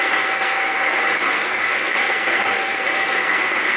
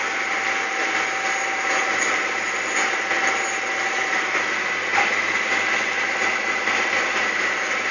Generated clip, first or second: first